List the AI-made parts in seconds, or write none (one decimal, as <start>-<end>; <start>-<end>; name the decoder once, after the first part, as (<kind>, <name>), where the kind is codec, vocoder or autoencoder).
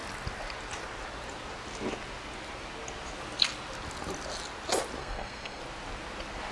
5.0-5.6 (codec, SNAC)